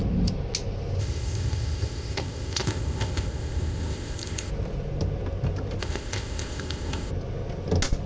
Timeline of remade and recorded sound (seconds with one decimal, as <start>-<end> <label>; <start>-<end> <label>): 0.0-1.0 recorded; 1.0-4.5 remade; 4.5-5.8 recorded; 5.8-7.1 remade; 7.1-8.1 recorded